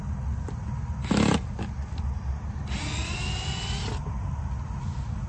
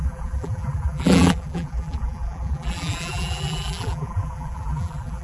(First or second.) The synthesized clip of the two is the second